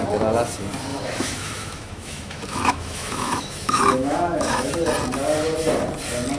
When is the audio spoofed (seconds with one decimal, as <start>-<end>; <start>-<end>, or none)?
0.9-4.7